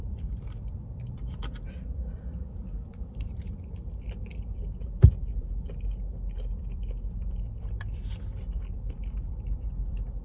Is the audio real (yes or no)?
no